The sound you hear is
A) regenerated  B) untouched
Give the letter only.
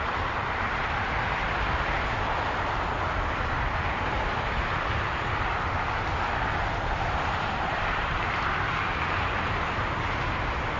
A